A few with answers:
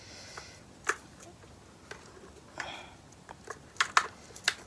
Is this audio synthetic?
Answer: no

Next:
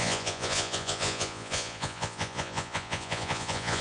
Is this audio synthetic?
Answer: yes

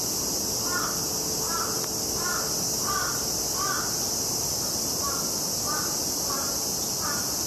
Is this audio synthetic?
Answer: no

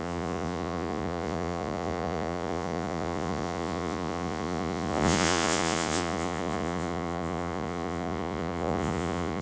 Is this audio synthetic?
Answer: yes